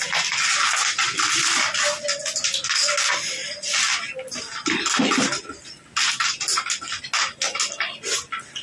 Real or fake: real